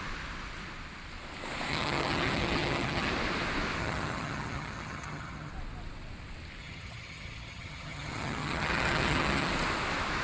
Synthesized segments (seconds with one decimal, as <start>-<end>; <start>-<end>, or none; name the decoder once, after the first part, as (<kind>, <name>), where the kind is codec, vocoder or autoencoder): 1.7-3.1 (vocoder, HiFi-GAN); 3.8-5.5; 6.6-9.5